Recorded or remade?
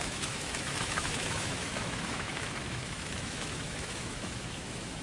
remade